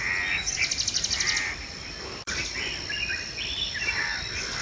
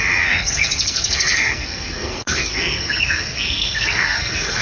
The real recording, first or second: first